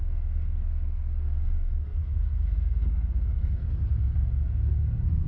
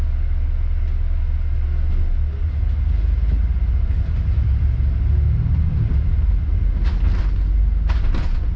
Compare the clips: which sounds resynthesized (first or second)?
first